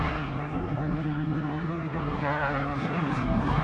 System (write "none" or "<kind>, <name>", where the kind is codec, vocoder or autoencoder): codec, SNAC